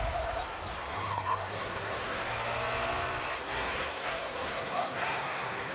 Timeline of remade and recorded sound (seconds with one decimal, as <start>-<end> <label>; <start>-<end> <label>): 0.0-0.7 recorded; 0.7-2.3 remade; 2.3-3.4 recorded; 3.4-5.7 remade